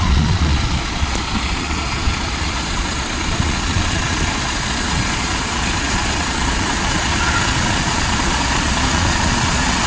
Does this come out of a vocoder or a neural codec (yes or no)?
yes